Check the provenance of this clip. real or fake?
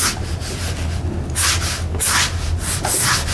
real